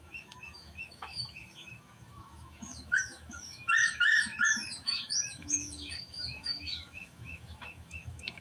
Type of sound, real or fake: fake